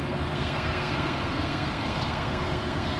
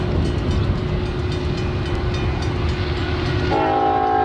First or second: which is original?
second